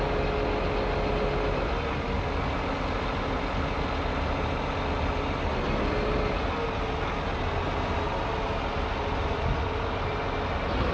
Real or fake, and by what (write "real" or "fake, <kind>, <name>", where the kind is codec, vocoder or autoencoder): real